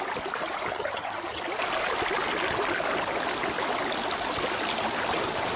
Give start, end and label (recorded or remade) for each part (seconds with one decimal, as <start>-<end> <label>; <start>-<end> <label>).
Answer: 0.0-0.7 recorded; 0.7-1.4 remade; 1.4-5.6 recorded